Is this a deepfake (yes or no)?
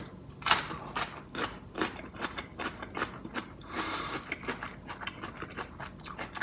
no